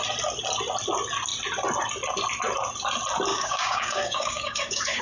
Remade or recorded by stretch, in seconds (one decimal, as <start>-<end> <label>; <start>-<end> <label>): 0.0-3.3 recorded; 3.3-5.0 remade